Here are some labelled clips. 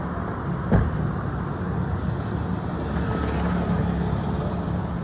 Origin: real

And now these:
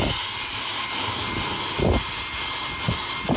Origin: real